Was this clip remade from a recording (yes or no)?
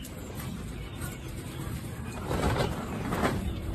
yes